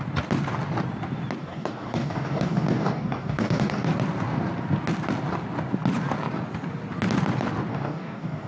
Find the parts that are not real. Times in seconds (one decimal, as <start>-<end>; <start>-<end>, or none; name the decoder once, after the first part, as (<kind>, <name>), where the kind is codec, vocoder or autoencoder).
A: 1.4-3.9 (codec, DAC); 7.7-8.5